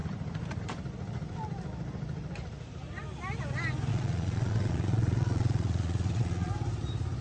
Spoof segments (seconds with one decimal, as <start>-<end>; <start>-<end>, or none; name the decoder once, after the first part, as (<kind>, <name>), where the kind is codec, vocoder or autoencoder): 3.9-6.5 (vocoder, Vocos)